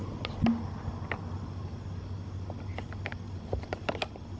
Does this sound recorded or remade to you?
recorded